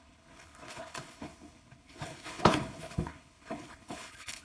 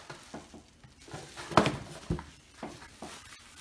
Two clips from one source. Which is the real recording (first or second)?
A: second